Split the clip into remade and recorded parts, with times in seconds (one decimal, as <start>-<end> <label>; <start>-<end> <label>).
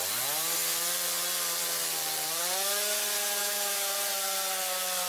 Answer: 0.0-3.4 recorded; 3.4-3.9 remade; 3.9-5.1 recorded